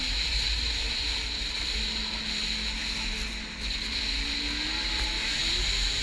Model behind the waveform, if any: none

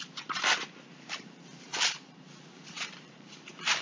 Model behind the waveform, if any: vocoder, BigVGAN v2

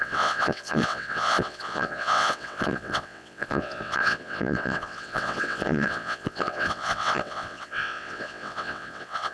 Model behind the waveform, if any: vocoder, WaveNeXt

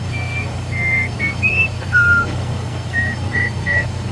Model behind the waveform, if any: codec, SNAC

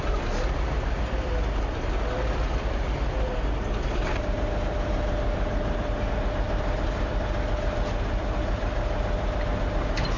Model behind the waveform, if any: none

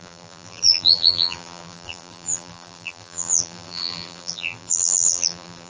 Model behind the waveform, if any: vocoder, BigVGAN v2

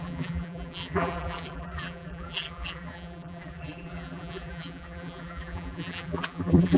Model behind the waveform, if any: vocoder, BigVGAN v2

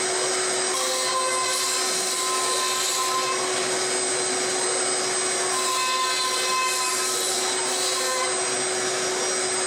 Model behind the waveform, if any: none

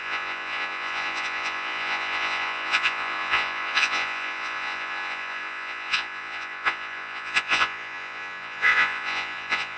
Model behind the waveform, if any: vocoder, Vocos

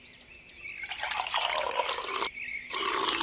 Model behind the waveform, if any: none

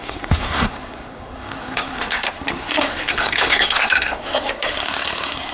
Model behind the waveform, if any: codec, SNAC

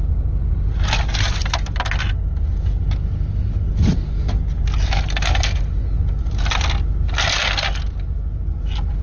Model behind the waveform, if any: none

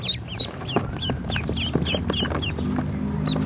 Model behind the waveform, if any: none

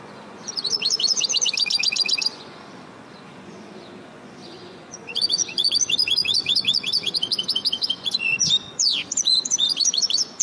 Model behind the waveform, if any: vocoder, Vocos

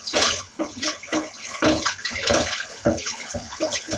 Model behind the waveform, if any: codec, HILCodec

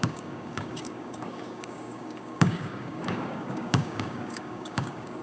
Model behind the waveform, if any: codec, DAC